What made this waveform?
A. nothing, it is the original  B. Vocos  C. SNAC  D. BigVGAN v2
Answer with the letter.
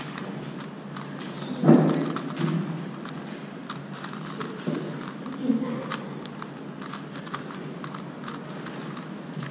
A